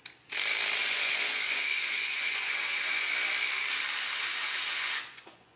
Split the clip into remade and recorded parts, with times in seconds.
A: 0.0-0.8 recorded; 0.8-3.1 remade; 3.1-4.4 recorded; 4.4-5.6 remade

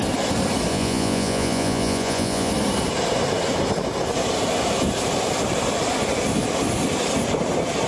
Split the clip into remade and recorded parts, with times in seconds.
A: 0.0-0.7 recorded; 0.7-2.5 remade; 2.5-7.9 recorded

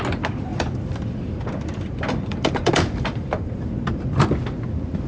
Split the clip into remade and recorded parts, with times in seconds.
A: 0.0-0.5 recorded; 0.5-3.6 remade; 3.6-5.1 recorded

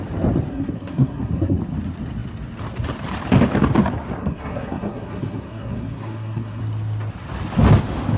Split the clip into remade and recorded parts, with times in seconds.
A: 0.0-0.5 recorded; 0.5-1.6 remade; 1.6-4.2 recorded; 4.2-6.6 remade; 6.6-8.2 recorded

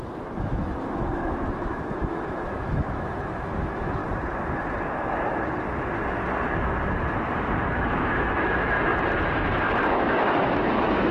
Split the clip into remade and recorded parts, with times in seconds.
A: 0.0-4.0 remade; 4.0-7.7 recorded; 7.7-8.9 remade; 8.9-9.9 recorded; 9.9-11.1 remade

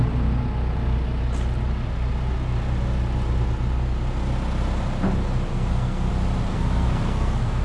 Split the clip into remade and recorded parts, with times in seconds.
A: 0.0-5.5 recorded; 5.5-6.1 remade; 6.1-6.5 recorded; 6.5-7.6 remade

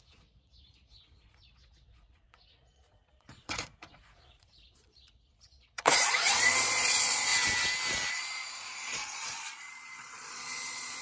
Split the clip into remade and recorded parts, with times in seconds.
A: 0.0-7.3 remade; 7.3-8.1 recorded; 8.1-11.0 remade

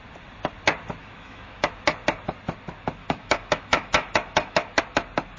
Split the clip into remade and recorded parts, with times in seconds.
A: 0.0-1.0 recorded; 1.0-1.7 remade; 1.7-3.0 recorded; 3.0-4.8 remade; 4.8-5.4 recorded